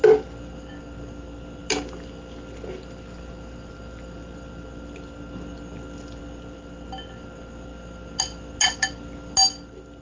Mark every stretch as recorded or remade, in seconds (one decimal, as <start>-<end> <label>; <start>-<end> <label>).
0.0-10.0 recorded